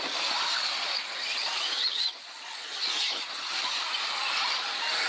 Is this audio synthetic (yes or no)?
no